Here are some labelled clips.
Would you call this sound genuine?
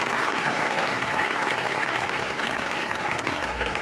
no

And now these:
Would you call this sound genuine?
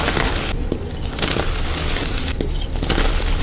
yes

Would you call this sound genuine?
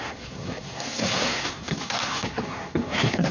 no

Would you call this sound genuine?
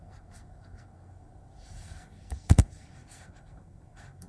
no